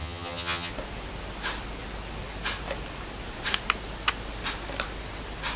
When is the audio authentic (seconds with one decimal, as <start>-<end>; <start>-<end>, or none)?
0.7-5.6